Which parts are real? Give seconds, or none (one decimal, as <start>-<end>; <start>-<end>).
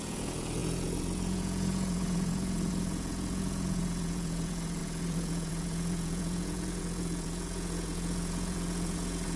none